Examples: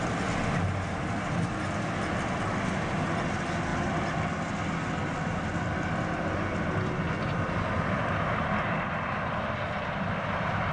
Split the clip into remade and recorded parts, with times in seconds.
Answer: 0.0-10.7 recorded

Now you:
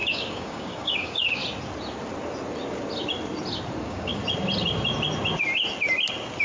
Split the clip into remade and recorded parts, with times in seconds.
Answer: 0.0-1.4 remade; 1.4-3.8 recorded; 3.8-4.2 remade; 4.2-6.4 recorded

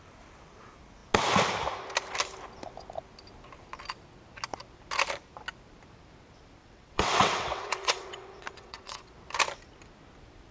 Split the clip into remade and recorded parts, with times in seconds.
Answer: 0.0-6.6 recorded; 6.6-9.1 remade; 9.1-10.5 recorded